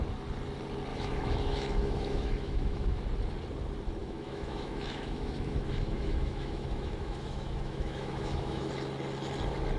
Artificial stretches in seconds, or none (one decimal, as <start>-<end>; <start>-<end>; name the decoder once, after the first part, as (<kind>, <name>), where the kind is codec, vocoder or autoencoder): 0.9-3.0 (autoencoder, DAC-VAE); 4.0-8.7